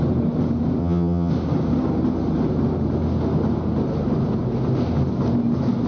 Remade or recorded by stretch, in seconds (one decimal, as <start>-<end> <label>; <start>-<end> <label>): 0.0-0.8 recorded; 0.8-1.3 remade; 1.3-5.9 recorded